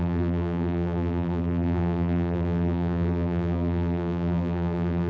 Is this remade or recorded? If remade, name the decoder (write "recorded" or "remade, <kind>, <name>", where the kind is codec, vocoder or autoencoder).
remade, vocoder, BigVGAN v2